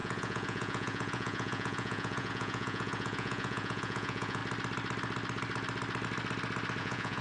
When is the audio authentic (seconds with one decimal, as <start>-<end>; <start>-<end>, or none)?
4.4-6.8